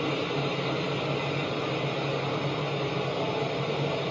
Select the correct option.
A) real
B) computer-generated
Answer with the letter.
A